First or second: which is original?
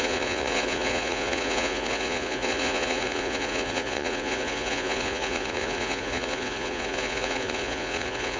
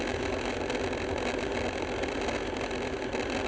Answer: second